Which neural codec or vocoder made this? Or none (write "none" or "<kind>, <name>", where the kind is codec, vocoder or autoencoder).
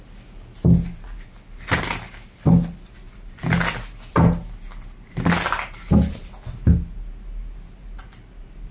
none